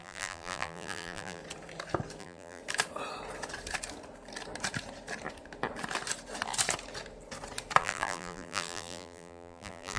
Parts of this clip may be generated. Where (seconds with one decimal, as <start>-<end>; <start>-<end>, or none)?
0.0-1.4; 2.2-2.6; 7.8-10.0